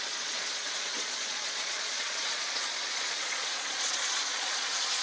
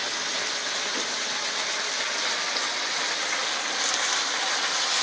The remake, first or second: first